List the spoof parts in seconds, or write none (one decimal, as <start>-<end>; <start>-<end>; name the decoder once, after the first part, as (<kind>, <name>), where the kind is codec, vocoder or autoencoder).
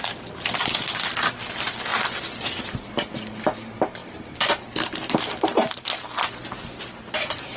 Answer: none